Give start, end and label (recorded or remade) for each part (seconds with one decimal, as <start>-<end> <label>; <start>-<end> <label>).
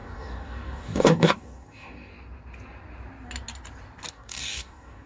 0.0-2.1 remade; 2.1-4.1 recorded; 4.1-5.1 remade